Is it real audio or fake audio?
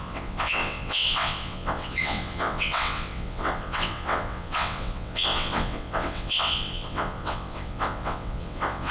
fake